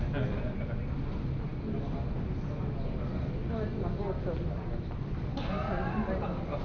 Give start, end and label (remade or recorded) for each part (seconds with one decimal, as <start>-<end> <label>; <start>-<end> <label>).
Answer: 0.0-6.6 recorded